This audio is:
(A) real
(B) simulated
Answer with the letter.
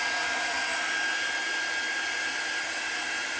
B